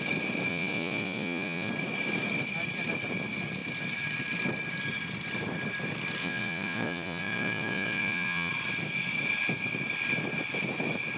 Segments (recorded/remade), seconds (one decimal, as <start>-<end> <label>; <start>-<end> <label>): 0.0-0.5 recorded; 0.5-1.7 remade; 1.7-6.2 recorded; 6.2-8.5 remade; 8.5-11.2 recorded